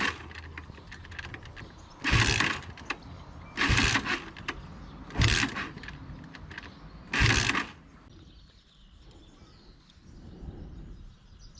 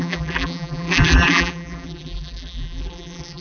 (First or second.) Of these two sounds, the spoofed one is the second